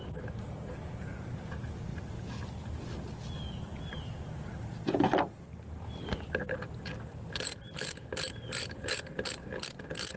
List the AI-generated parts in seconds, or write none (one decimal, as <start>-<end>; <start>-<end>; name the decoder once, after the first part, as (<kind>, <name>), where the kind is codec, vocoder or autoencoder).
none